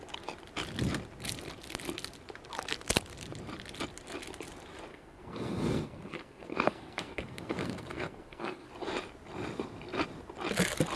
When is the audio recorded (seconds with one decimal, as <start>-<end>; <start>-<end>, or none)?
0.0-4.9; 8.7-11.0